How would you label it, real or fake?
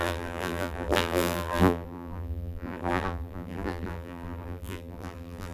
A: fake